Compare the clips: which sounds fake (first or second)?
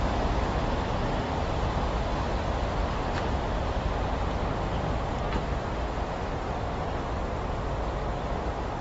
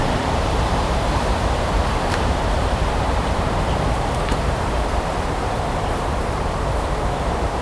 second